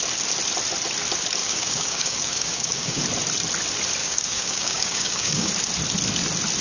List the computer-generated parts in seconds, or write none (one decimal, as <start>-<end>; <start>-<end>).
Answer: 1.4-3.0; 4.0-5.5